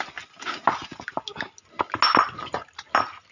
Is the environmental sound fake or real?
real